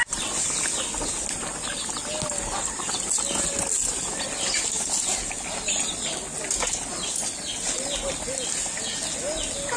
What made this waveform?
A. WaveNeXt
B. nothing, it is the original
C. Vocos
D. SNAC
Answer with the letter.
B